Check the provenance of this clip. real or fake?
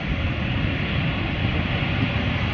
real